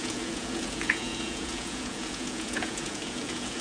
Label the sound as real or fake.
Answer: fake